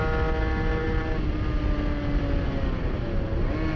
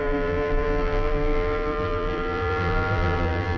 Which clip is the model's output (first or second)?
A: second